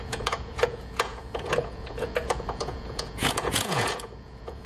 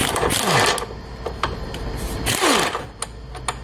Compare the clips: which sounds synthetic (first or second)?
first